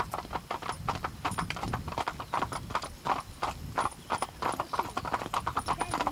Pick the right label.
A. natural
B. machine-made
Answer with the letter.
A